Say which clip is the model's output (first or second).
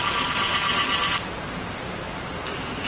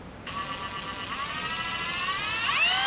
first